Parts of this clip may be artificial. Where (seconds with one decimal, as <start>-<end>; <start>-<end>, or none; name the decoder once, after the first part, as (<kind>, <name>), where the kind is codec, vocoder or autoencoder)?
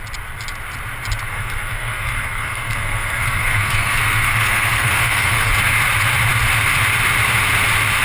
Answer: 1.3-5.5 (codec, SNAC)